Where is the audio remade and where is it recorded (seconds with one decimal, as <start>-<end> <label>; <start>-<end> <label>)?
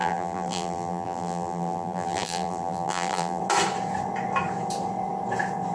0.0-3.4 remade; 3.4-5.7 recorded